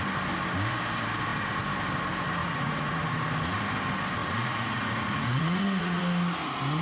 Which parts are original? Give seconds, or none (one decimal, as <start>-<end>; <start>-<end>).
0.0-2.4; 3.0-4.2; 6.0-6.8

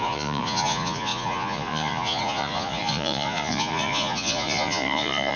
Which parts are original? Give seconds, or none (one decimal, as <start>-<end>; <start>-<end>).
none

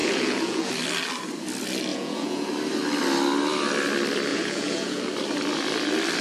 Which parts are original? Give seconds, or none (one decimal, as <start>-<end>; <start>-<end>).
0.7-1.9; 2.5-4.3; 5.0-6.2

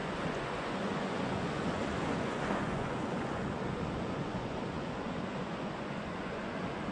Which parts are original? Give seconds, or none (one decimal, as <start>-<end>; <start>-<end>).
none